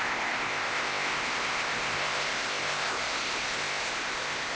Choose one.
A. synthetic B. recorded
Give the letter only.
A